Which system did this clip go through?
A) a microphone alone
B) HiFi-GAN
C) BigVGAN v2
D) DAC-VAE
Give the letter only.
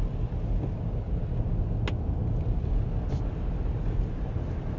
A